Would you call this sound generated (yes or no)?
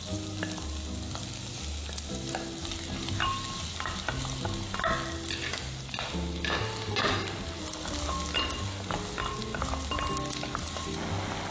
no